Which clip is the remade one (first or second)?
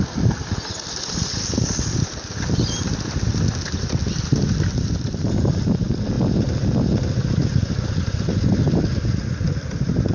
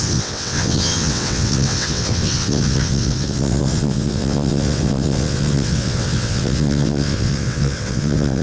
second